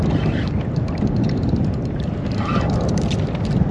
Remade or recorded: recorded